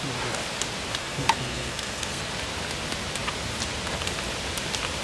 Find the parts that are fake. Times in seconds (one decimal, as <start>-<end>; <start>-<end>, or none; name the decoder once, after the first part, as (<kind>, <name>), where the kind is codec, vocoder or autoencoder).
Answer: 1.0-2.3 (codec, SNAC)